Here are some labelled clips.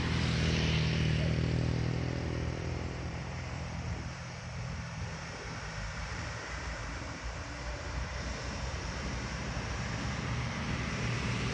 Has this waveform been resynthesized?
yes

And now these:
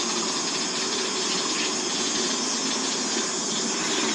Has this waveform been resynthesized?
no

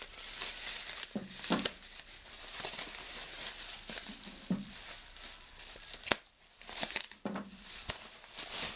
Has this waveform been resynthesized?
yes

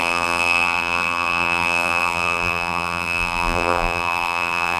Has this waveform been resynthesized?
yes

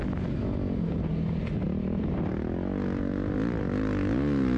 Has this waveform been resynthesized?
no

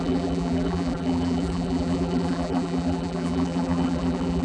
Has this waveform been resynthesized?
yes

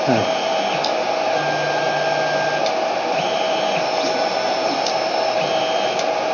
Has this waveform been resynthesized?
no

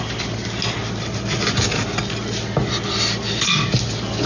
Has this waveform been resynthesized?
no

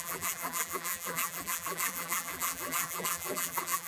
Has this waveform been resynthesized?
yes